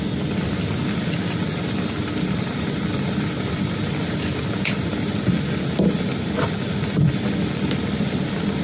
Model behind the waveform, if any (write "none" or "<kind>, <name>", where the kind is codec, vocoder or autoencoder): none